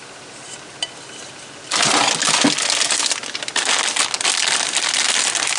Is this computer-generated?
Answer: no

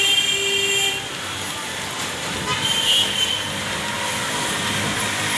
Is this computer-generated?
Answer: no